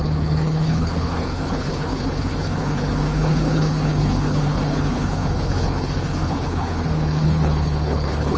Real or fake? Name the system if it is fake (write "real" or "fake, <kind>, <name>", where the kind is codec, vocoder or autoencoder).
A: fake, codec, HILCodec